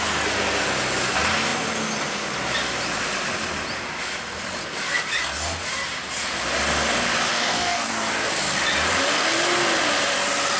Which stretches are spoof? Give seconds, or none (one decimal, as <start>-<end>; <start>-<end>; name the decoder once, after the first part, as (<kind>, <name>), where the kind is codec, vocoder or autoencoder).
7.3-7.9 (codec, DAC)